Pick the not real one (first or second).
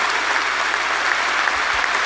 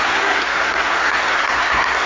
second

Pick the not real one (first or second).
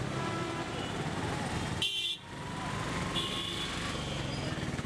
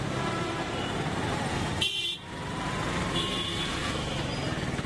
second